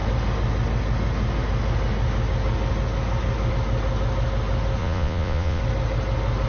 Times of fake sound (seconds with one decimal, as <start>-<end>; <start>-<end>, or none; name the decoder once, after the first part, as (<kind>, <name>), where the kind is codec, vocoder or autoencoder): 4.8-5.6 (vocoder, Vocos)